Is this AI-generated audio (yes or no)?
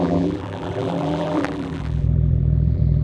yes